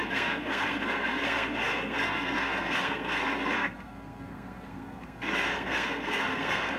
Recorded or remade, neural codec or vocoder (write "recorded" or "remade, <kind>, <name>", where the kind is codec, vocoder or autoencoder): remade, codec, SNAC